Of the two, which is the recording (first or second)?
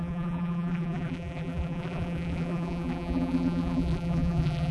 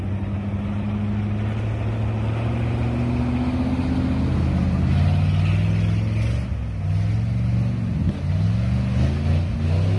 second